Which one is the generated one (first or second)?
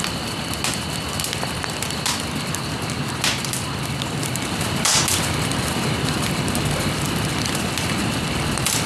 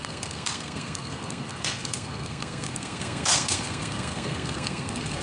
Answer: second